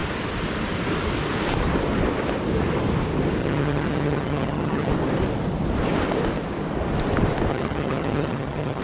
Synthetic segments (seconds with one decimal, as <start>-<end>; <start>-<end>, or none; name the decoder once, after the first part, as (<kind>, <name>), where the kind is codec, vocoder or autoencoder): 3.4-4.9 (vocoder, HiFi-GAN); 7.5-8.8